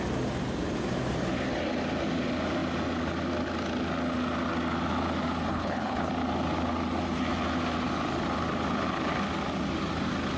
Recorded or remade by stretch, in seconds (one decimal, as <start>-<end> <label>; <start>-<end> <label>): 0.0-5.5 recorded; 5.5-6.1 remade; 6.1-10.4 recorded